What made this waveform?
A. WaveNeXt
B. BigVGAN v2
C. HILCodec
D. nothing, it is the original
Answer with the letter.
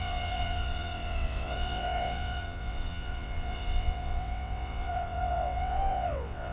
A